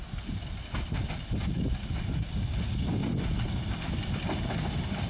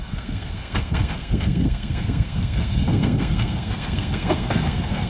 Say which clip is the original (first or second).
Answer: first